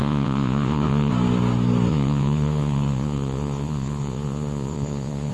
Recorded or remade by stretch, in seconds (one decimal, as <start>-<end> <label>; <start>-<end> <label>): 0.0-1.1 remade; 1.1-1.9 recorded; 1.9-5.3 remade